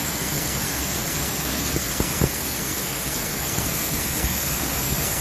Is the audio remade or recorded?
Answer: remade